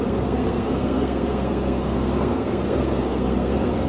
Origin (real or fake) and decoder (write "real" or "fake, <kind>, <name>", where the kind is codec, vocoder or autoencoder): fake, codec, SNAC